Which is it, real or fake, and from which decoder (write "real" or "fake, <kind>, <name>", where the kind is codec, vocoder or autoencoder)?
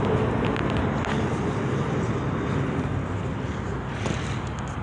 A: real